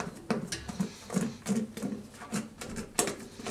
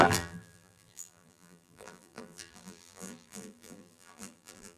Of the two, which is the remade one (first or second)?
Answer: second